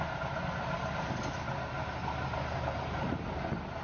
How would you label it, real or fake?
real